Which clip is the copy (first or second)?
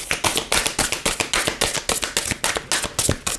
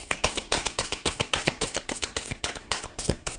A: second